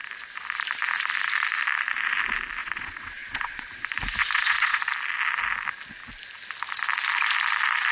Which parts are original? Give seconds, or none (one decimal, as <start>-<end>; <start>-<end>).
0.0-2.6; 3.7-4.2; 4.8-7.9

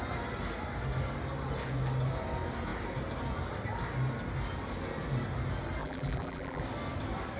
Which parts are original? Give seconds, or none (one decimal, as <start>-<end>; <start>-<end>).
0.0-5.8; 6.6-7.4